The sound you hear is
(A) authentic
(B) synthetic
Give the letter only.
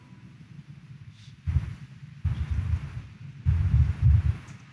A